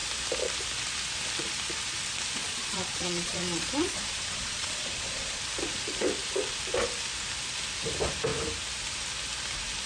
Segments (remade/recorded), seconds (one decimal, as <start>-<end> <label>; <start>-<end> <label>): 0.0-2.4 recorded; 2.4-5.4 remade; 5.4-9.9 recorded